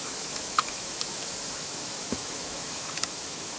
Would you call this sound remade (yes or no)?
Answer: yes